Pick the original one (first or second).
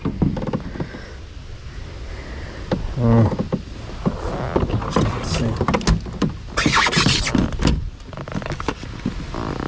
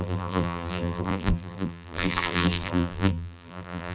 first